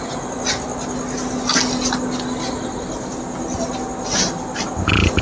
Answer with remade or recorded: recorded